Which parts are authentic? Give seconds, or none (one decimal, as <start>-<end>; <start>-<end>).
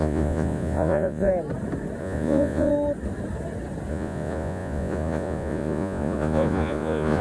1.3-2.0; 2.7-3.9